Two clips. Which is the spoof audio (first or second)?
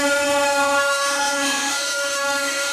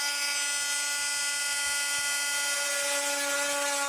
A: first